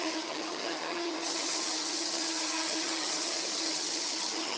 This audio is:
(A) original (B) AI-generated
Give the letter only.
B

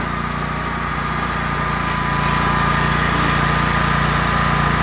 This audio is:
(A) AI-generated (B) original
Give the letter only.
B